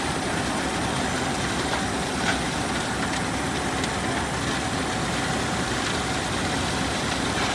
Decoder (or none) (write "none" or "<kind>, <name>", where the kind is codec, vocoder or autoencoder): none